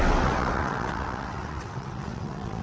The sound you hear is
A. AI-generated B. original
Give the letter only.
A